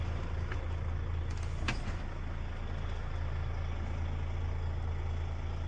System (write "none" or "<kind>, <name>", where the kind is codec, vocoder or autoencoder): none